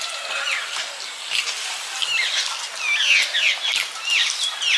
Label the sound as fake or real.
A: real